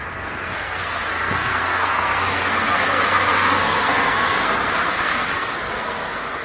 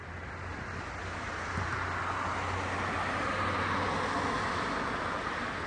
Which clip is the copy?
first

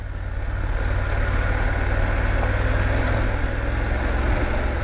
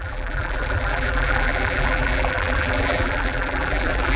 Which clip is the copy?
second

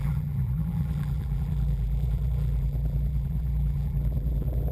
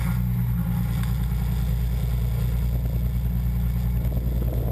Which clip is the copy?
first